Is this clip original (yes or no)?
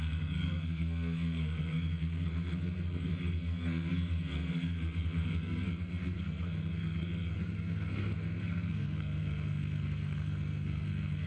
no